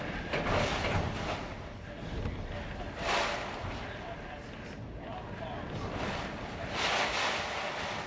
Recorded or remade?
recorded